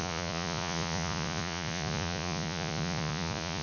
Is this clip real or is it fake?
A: fake